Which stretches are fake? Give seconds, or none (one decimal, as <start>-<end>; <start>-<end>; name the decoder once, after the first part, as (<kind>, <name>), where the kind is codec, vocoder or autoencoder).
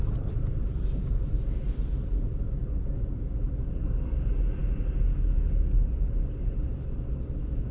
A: none